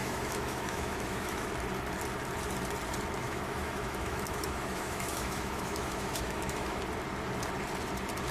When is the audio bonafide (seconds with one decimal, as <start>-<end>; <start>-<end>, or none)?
1.5-3.2; 6.8-8.3

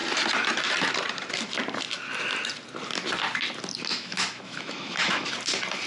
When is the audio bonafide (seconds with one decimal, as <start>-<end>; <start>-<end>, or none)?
0.0-3.9; 5.3-5.9

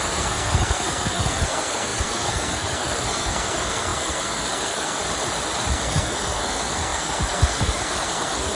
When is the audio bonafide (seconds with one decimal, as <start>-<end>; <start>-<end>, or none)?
5.0-5.7

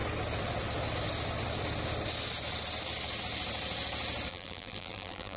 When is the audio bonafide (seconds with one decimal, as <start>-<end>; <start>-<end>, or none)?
0.0-4.3

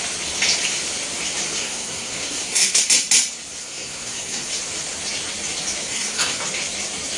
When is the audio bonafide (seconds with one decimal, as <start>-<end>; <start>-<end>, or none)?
0.0-1.6; 2.8-3.6; 4.6-5.8; 6.4-7.2

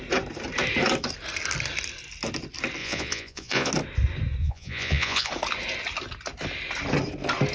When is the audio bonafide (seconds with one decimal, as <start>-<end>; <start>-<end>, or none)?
0.0-2.8; 3.7-4.4; 5.3-7.5